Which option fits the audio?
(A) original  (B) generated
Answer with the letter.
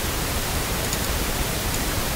B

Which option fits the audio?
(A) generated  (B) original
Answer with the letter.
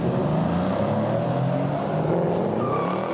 B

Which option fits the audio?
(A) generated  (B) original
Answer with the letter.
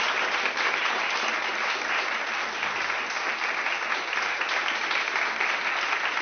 B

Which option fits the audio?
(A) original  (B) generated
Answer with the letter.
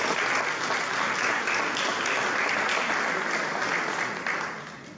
A